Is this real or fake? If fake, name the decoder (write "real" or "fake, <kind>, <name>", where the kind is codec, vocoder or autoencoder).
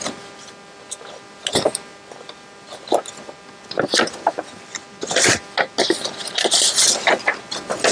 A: real